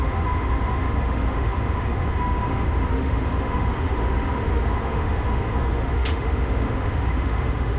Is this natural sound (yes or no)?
no